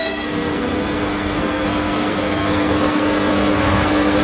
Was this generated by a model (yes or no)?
yes